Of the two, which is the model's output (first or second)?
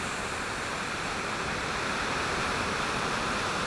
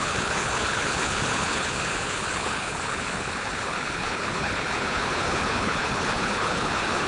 second